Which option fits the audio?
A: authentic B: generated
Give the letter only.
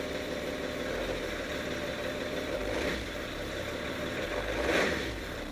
B